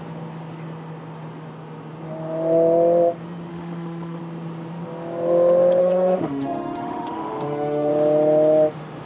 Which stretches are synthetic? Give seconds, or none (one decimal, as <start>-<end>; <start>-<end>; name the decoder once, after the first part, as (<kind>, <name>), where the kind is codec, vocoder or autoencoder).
3.5-4.2 (autoencoder, DAC-VAE); 5.8-7.9

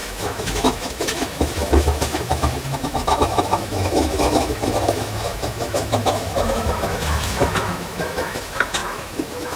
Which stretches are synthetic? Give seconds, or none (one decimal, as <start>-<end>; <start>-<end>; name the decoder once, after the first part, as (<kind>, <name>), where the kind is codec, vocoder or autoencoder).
0.0-9.6 (autoencoder, DAC-VAE)

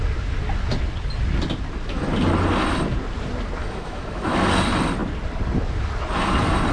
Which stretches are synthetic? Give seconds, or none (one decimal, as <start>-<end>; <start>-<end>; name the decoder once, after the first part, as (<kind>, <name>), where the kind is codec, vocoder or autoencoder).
3.6-4.4 (autoencoder, DAC-VAE)

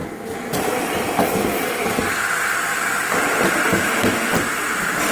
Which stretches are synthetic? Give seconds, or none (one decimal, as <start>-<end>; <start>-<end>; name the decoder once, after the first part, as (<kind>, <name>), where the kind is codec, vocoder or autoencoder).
3.7-4.3 (autoencoder, DAC-VAE)

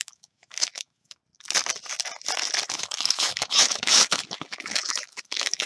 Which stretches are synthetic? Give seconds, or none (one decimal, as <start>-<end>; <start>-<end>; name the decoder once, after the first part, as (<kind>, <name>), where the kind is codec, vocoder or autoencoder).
0.0-1.2 (autoencoder, DAC-VAE); 2.7-5.7